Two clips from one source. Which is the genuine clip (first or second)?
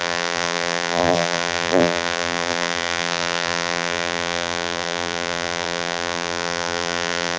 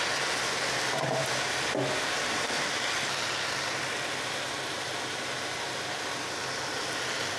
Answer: second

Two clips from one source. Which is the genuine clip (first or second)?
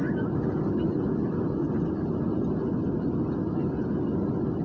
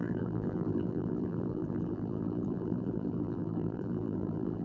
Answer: first